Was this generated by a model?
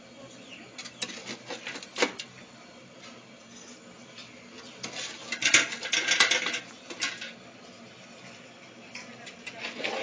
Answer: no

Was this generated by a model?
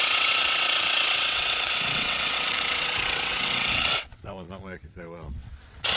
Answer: yes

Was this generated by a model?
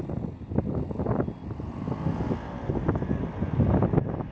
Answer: no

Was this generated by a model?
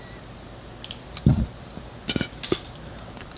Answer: no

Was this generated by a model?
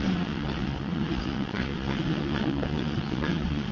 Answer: yes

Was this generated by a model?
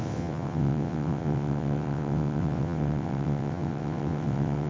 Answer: yes